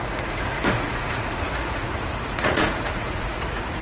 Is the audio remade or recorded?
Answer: remade